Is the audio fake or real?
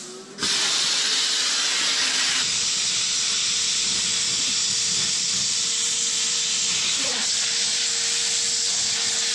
real